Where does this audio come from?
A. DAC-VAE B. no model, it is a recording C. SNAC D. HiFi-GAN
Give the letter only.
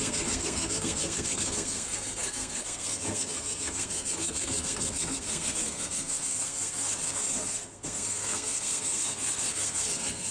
C